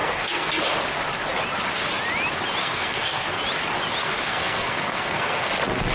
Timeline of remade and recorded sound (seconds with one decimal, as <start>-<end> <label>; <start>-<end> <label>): 0.0-0.5 remade; 0.5-2.6 recorded; 2.6-3.4 remade; 3.4-4.0 recorded; 4.0-5.5 remade; 5.5-5.9 recorded